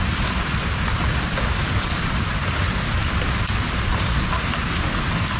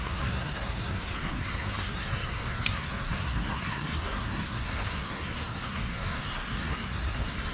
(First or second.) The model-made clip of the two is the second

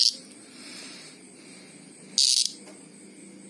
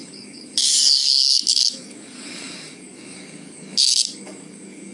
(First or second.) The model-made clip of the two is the second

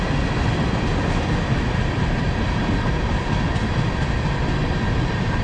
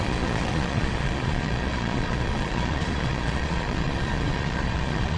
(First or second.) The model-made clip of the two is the second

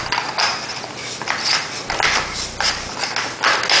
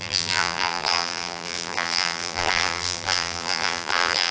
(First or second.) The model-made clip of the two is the second